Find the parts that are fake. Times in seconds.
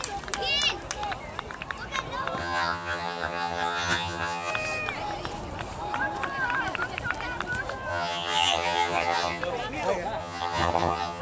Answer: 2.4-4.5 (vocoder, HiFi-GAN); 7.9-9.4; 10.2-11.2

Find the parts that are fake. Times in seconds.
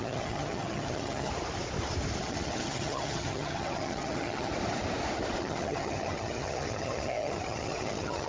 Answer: 0.0-1.3 (vocoder, HiFi-GAN); 2.2-4.5; 5.4-8.3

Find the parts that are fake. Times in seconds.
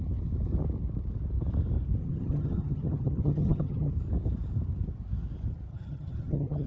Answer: 2.0-3.9 (vocoder, HiFi-GAN); 5.7-6.7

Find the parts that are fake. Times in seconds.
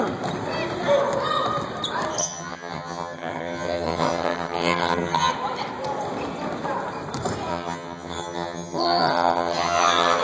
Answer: 2.2-5.3 (vocoder, HiFi-GAN); 7.5-10.2